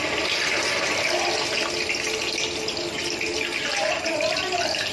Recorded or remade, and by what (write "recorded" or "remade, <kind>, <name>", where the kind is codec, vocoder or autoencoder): recorded